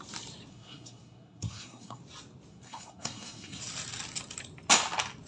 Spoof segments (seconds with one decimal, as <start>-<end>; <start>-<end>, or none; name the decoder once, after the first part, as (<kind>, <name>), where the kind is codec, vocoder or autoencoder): 0.5-2.0 (codec, SNAC); 2.5-3.6